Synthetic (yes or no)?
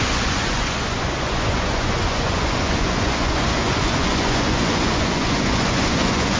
yes